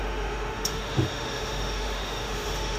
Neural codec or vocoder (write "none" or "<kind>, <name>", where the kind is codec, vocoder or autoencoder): autoencoder, DAC-VAE